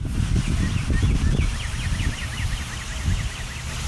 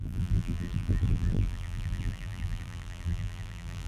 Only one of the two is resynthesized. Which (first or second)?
second